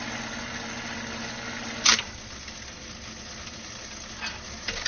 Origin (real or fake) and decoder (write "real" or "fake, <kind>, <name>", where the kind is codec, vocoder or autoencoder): real